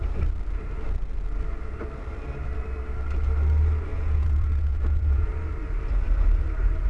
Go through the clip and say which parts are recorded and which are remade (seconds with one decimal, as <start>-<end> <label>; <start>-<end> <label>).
0.0-3.9 recorded; 3.9-5.3 remade; 5.3-6.9 recorded